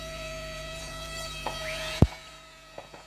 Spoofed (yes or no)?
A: yes